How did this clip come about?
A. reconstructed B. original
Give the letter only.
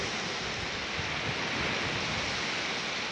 B